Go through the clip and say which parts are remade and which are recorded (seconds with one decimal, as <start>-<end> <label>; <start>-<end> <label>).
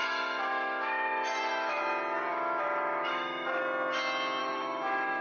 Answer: 0.0-1.8 remade; 1.8-2.3 recorded; 2.3-3.6 remade; 3.6-4.4 recorded; 4.4-5.2 remade